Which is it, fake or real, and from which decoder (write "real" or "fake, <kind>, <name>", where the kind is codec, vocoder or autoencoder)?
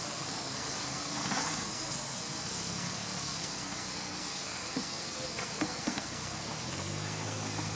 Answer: fake, codec, SNAC